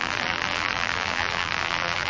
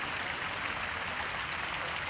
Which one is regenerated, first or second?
first